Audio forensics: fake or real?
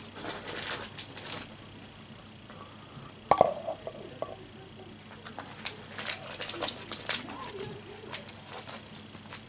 real